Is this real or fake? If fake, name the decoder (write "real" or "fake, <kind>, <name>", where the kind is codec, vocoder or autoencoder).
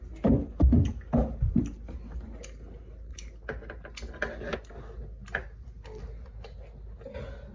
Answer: real